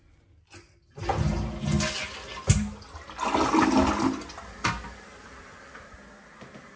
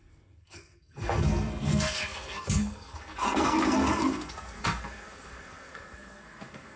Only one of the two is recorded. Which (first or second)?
first